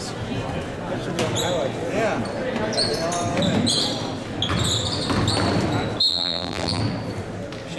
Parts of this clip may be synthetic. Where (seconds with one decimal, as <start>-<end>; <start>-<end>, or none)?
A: 6.1-6.8